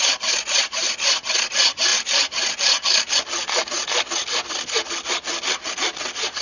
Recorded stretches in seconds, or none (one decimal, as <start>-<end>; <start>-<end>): 0.0-6.4